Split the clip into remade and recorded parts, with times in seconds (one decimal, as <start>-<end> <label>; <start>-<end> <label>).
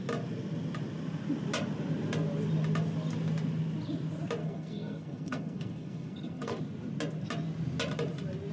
0.0-4.4 recorded; 4.4-6.6 remade; 6.6-8.5 recorded